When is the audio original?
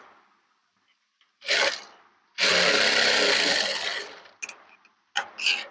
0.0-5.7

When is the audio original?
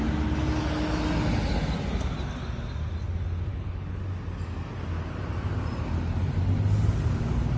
0.0-3.5; 4.0-7.6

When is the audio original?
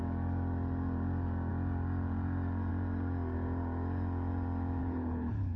0.0-4.8